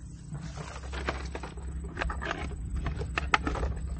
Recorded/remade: recorded